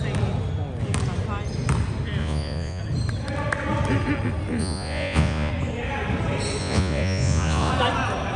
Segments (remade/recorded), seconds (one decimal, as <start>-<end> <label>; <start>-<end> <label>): 0.0-2.2 recorded; 2.2-2.8 remade; 2.8-4.6 recorded; 4.6-5.5 remade; 5.5-6.6 recorded; 6.6-7.7 remade; 7.7-8.4 recorded